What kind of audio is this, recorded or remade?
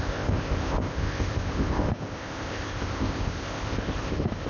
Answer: remade